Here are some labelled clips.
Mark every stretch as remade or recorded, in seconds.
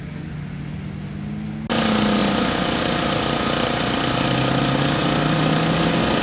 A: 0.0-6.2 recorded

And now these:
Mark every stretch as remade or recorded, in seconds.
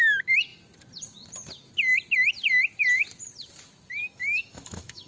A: 0.0-4.0 recorded; 4.0-5.1 remade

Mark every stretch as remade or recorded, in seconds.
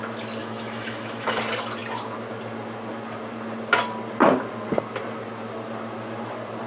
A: 0.0-0.4 recorded; 0.4-1.4 remade; 1.4-6.7 recorded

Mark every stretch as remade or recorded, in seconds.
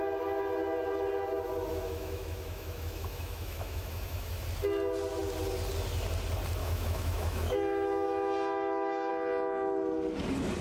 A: 0.0-1.7 recorded; 1.7-4.3 remade; 4.3-6.6 recorded; 6.6-9.1 remade; 9.1-10.6 recorded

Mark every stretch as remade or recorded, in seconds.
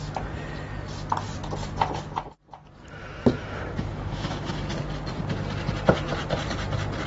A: 0.0-3.0 recorded; 3.0-4.7 remade; 4.7-7.1 recorded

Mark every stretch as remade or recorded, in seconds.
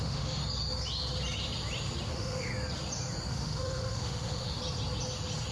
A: 0.0-0.4 remade; 0.4-2.1 recorded; 2.1-2.5 remade; 2.5-3.3 recorded; 3.3-4.6 remade; 4.6-5.5 recorded